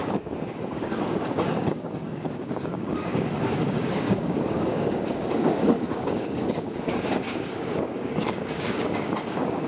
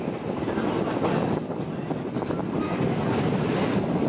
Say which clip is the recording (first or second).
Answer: second